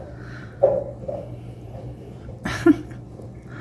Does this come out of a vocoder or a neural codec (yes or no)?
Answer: yes